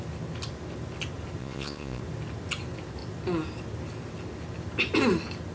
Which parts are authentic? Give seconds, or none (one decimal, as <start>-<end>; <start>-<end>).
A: 0.0-1.4; 2.0-5.5